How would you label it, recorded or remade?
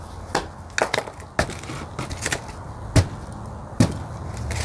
recorded